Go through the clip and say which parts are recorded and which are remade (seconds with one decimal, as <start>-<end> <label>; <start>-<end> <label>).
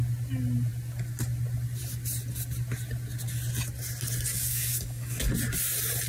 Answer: 0.0-4.3 recorded; 4.3-5.3 remade; 5.3-6.1 recorded